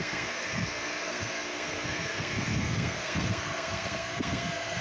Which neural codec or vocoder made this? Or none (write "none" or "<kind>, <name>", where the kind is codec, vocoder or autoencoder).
codec, SNAC